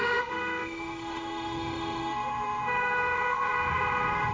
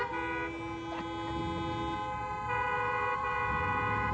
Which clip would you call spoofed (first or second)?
first